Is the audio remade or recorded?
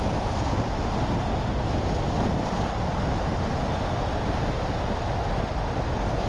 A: recorded